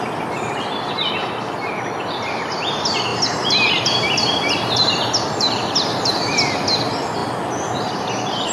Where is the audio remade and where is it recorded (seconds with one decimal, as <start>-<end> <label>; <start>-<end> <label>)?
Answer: 0.0-3.1 recorded; 3.1-6.1 remade; 6.1-8.5 recorded